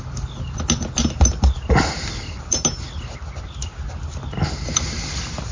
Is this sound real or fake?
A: real